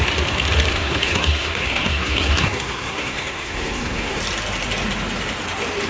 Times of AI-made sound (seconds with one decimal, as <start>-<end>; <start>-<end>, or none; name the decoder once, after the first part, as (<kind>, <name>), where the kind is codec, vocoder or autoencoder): 0.7-4.2 (codec, SNAC)